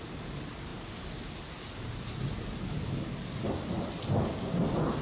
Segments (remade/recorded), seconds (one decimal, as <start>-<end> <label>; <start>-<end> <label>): 0.0-5.0 recorded